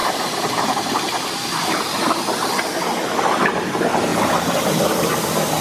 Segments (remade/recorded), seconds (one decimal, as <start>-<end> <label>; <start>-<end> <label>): 0.0-2.5 remade; 2.5-5.6 recorded

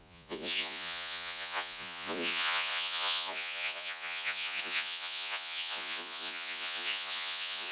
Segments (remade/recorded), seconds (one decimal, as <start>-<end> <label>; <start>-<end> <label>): 0.0-7.7 remade